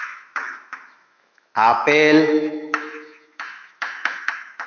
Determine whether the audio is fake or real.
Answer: fake